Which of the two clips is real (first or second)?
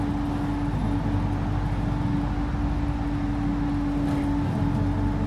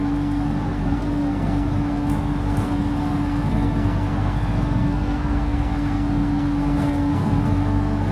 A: first